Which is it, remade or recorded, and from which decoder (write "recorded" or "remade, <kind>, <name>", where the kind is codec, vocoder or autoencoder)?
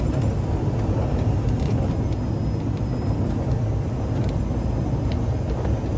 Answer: recorded